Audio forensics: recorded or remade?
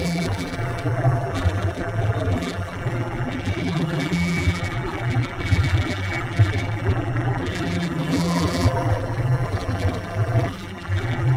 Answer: remade